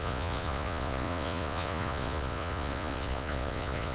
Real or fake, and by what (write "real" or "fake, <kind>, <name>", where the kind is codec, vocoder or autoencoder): fake, vocoder, Vocos